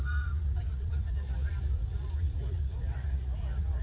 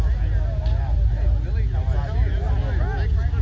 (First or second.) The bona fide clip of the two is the second